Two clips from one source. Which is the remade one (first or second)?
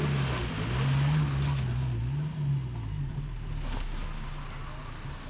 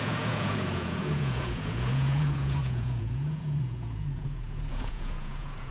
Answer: second